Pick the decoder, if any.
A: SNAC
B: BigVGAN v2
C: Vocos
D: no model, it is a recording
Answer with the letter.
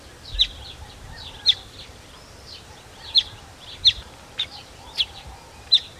B